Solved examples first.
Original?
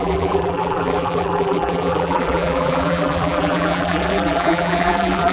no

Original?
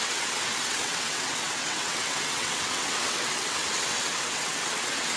no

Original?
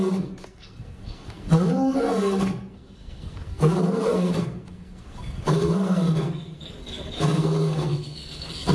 no